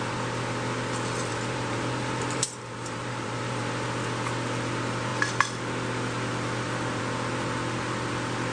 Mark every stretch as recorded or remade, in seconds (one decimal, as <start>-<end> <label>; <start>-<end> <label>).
0.0-1.3 recorded; 1.3-3.6 remade; 3.6-8.5 recorded